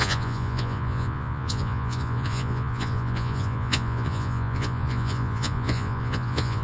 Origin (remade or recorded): remade